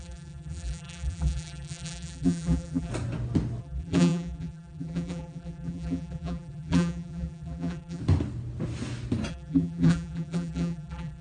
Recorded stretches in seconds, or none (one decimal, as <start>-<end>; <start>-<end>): 2.9-3.6; 8.0-9.3